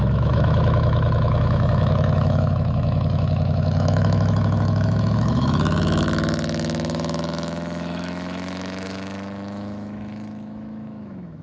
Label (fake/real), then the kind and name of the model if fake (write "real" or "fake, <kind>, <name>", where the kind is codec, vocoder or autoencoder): fake, autoencoder, DAC-VAE